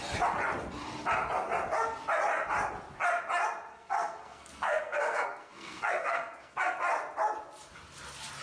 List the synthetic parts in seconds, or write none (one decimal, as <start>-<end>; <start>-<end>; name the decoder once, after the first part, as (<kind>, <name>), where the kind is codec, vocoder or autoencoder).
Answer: 3.7-6.6 (codec, SNAC)